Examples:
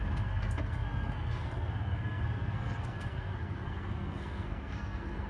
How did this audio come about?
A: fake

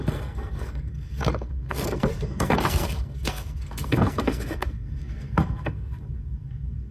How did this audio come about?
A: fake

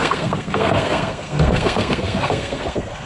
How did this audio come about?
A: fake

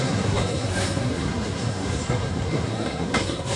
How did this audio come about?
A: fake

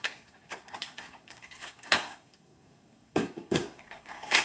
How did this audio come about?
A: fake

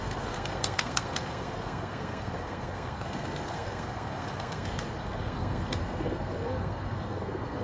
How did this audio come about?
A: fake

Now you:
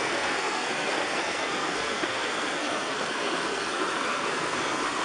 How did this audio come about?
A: fake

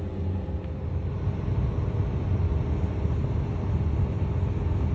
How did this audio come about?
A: real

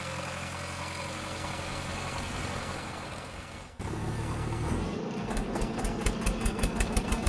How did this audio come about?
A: fake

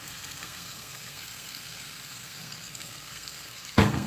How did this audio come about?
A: fake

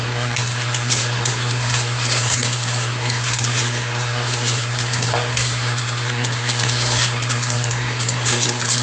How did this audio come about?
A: fake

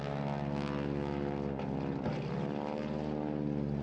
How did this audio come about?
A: real